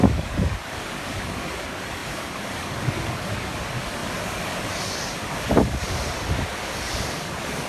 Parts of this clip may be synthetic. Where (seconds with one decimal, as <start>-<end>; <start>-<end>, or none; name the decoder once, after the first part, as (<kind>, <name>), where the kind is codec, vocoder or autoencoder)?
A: 0.0-7.7 (codec, DAC)